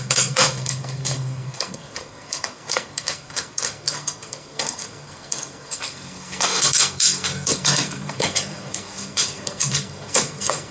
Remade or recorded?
remade